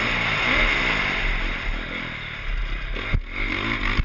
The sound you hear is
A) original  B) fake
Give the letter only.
A